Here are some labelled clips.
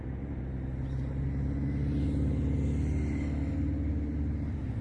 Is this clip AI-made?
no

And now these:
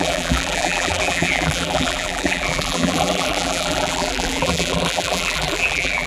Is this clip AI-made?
yes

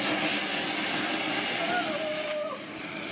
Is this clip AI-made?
no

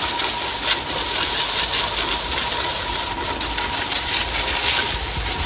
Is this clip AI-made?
no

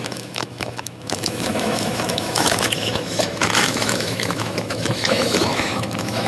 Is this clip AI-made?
yes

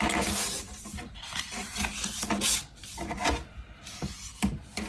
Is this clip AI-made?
no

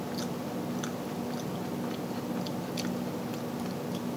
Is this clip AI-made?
no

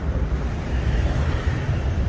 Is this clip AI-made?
yes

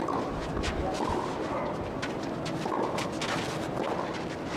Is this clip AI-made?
no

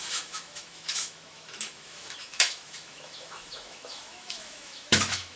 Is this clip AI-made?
yes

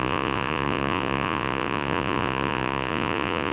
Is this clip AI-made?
yes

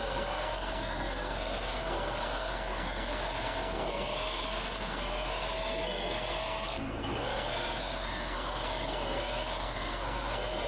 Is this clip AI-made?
yes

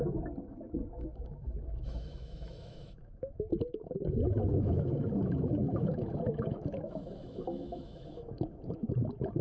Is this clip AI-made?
yes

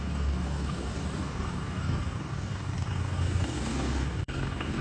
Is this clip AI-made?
yes